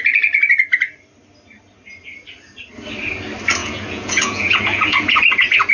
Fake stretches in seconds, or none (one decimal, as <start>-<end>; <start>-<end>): 3.6-5.2